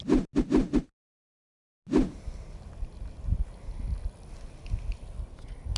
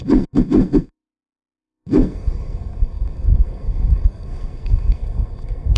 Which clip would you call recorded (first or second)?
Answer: first